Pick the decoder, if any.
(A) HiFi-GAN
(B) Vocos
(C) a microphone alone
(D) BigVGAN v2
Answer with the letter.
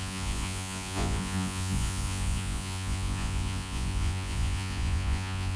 B